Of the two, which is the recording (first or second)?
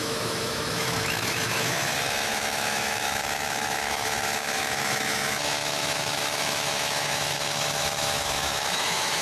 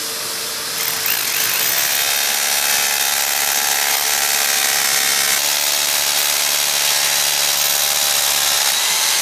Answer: second